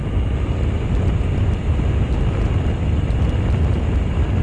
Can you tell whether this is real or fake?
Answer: real